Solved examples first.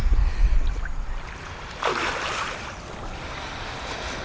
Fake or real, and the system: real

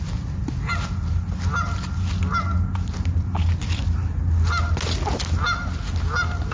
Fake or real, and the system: real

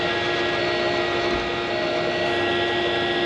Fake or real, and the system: real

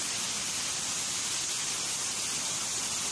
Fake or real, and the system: real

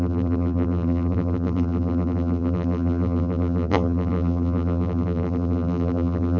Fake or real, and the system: fake, vocoder, BigVGAN v2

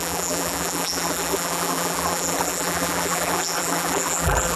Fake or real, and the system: fake, vocoder, BigVGAN v2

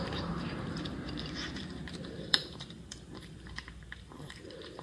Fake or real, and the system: fake, vocoder, BigVGAN v2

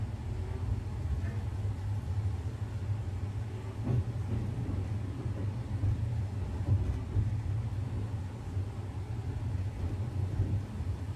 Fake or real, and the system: real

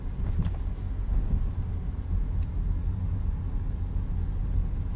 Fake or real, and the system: real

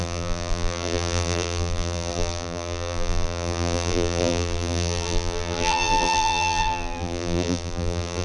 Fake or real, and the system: fake, vocoder, BigVGAN v2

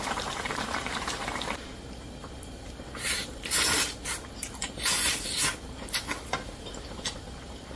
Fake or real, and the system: fake, vocoder, BigVGAN v2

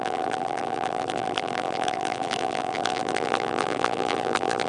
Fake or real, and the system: fake, vocoder, BigVGAN v2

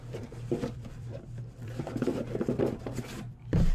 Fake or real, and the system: fake, vocoder, BigVGAN v2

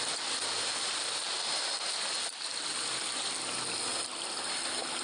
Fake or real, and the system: real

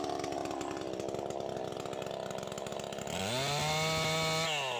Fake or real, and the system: real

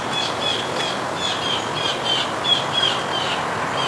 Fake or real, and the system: real